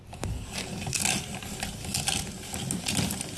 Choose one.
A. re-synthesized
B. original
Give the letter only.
B